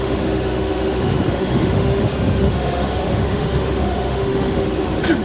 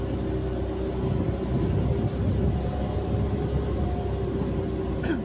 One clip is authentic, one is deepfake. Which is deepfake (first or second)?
first